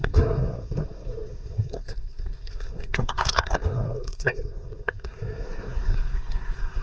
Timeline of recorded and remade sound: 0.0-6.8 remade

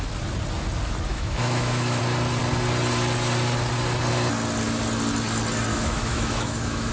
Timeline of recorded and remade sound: 0.0-1.1 recorded; 1.1-2.0 remade; 2.0-5.7 recorded; 5.7-6.9 remade

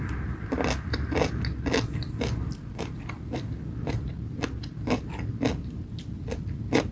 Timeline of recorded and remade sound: 0.0-6.9 recorded

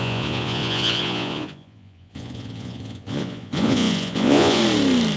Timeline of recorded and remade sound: 0.0-4.6 remade; 4.6-5.2 recorded

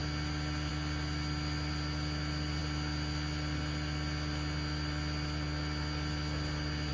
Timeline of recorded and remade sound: 0.0-6.9 recorded

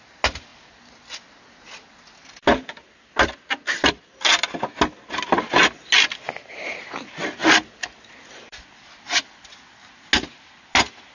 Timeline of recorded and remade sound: 0.0-11.1 recorded

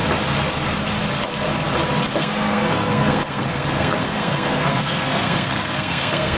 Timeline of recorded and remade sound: 0.0-2.2 recorded; 2.2-6.4 remade